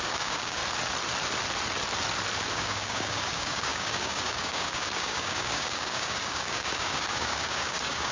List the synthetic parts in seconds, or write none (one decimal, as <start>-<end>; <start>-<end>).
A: 0.0-0.6; 2.5-8.1